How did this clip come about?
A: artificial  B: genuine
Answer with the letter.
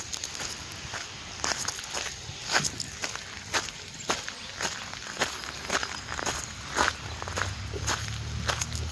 B